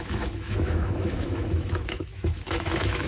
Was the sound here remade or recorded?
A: remade